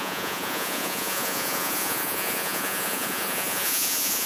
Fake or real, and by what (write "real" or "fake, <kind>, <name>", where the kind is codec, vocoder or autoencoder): fake, vocoder, Vocos